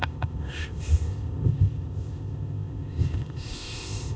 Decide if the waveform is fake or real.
fake